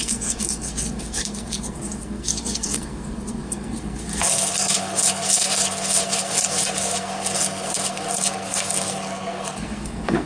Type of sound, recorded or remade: remade